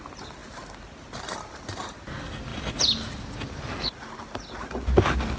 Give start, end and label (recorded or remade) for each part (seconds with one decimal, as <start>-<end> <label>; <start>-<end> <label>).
0.0-5.4 recorded